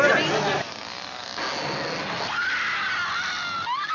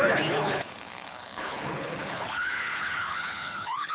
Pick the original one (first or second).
first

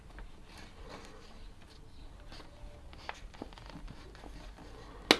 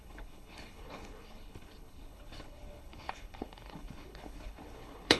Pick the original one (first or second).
first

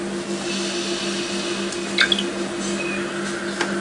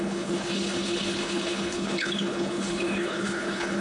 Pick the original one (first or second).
first